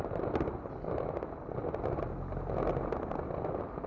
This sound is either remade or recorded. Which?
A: recorded